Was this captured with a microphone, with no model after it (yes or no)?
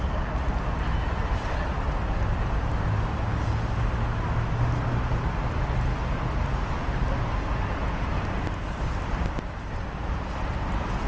yes